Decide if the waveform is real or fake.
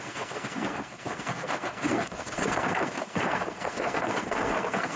fake